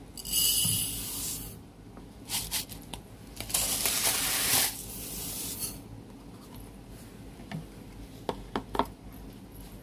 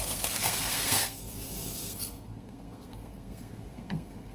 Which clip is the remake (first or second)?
second